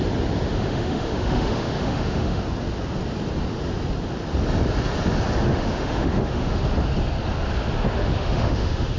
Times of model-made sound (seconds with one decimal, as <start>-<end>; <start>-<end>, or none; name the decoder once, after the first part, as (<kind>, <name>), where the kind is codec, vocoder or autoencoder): 0.5-2.4 (autoencoder, DAC-VAE); 5.5-6.6; 8.0-9.0

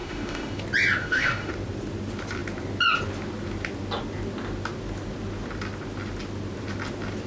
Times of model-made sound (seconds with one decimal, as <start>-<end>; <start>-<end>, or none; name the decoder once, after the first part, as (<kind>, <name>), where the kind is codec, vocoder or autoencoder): 0.0-0.6 (autoencoder, DAC-VAE); 1.0-1.5

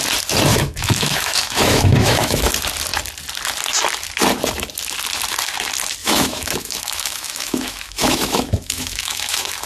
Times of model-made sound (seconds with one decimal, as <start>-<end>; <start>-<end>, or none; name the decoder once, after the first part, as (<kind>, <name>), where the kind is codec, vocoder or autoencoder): 0.5-2.5 (autoencoder, DAC-VAE); 6.0-9.7

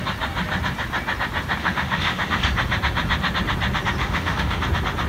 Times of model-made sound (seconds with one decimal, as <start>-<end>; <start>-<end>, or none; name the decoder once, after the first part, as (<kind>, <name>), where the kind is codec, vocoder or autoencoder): 1.6-2.4 (autoencoder, DAC-VAE); 4.0-4.6

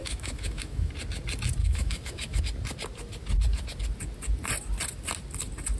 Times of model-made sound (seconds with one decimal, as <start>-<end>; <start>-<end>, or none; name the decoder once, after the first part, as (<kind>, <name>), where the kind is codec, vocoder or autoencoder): 0.0-0.9 (autoencoder, DAC-VAE); 1.6-2.4